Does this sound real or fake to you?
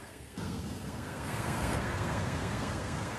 fake